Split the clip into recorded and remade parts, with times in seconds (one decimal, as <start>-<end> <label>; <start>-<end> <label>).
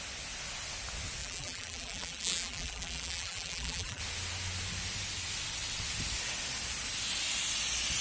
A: 0.0-1.2 recorded; 1.2-4.0 remade; 4.0-8.0 recorded